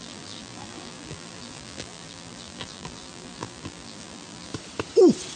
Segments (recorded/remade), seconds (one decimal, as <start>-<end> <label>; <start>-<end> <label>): 0.0-4.5 remade; 4.5-5.4 recorded